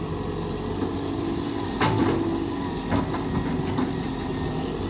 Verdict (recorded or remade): remade